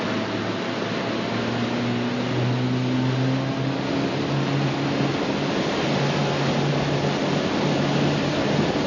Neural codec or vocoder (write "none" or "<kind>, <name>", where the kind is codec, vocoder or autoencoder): none